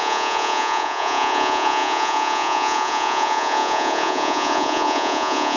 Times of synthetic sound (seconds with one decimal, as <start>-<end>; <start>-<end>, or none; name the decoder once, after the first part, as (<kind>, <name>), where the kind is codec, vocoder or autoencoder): 0.0-5.6 (vocoder, Vocos)